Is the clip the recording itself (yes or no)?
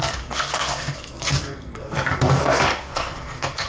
no